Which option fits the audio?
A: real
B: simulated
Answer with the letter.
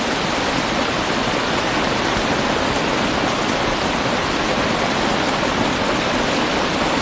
A